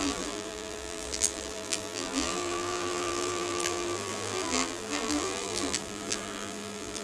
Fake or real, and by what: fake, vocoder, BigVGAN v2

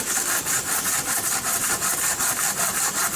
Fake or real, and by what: fake, vocoder, BigVGAN v2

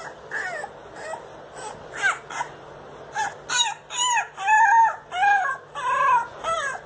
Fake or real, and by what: real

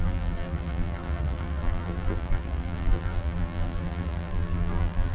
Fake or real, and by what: fake, vocoder, BigVGAN v2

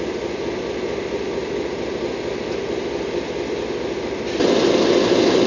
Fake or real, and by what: real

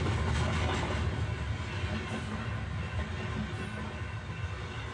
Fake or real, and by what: real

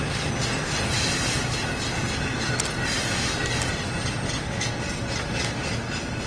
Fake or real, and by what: real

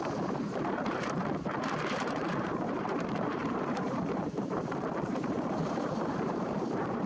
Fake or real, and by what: fake, vocoder, BigVGAN v2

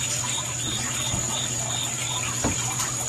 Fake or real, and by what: real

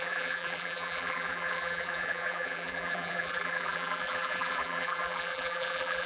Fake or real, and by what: fake, vocoder, BigVGAN v2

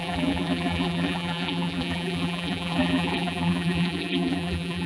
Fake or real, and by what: fake, vocoder, BigVGAN v2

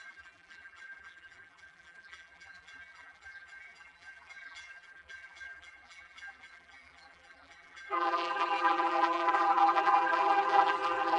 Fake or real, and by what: fake, vocoder, BigVGAN v2